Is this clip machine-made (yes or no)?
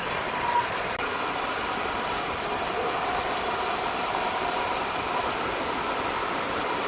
no